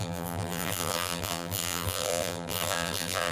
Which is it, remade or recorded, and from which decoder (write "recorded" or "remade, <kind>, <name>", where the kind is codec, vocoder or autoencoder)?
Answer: remade, vocoder, BigVGAN v2